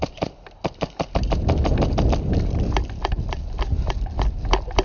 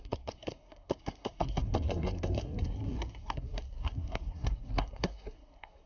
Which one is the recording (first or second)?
first